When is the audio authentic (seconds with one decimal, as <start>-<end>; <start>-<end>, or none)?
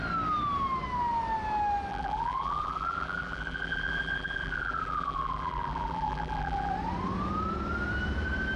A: 0.0-1.9; 6.7-8.6